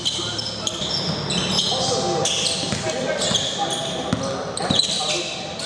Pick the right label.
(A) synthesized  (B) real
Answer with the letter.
B